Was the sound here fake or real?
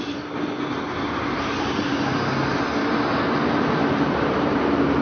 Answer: real